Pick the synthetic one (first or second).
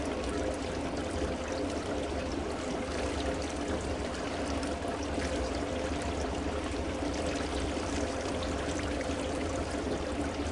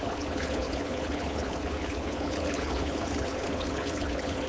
second